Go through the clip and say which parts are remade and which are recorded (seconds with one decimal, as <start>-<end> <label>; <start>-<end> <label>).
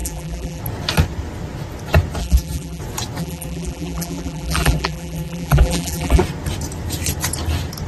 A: 0.0-0.6 remade; 0.6-2.2 recorded; 2.2-2.8 remade; 2.8-3.2 recorded; 3.2-6.2 remade; 6.2-7.9 recorded